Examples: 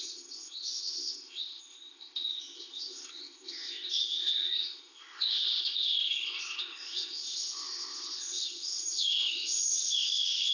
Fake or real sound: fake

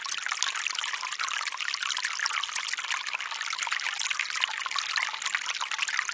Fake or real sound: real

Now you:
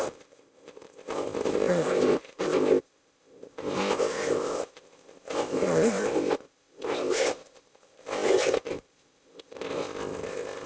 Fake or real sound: fake